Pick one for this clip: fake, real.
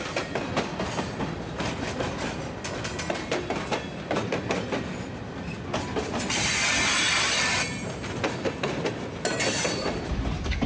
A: real